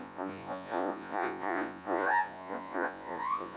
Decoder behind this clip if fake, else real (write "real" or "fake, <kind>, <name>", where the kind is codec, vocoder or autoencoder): fake, vocoder, Vocos